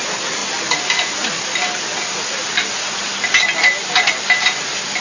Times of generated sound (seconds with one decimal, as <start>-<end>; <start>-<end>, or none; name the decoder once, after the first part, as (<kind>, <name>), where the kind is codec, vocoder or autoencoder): none